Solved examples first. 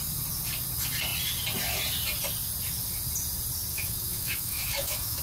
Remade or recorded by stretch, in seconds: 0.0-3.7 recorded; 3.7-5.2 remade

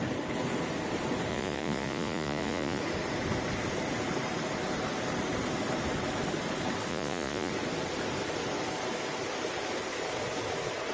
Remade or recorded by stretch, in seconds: 0.0-1.3 recorded; 1.3-2.8 remade; 2.8-6.9 recorded; 6.9-7.5 remade; 7.5-10.9 recorded